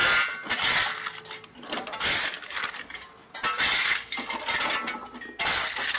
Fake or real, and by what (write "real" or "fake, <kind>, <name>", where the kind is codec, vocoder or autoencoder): real